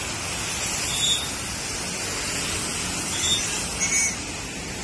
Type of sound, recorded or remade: recorded